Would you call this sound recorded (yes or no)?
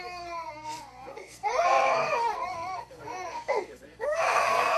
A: no